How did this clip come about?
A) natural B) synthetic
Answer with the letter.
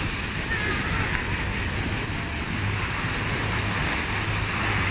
A